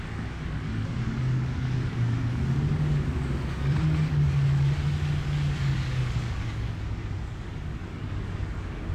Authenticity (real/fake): fake